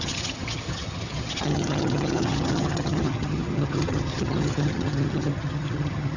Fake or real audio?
fake